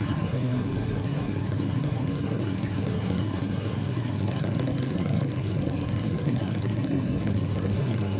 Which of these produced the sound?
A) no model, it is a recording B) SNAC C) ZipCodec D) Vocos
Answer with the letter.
B